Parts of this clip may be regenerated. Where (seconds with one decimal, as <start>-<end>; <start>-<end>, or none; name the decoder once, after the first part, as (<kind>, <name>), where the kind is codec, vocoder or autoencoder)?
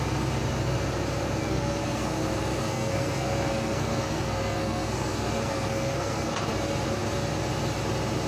1.4-6.4 (codec, SNAC)